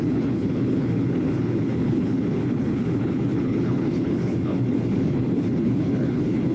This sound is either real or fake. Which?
fake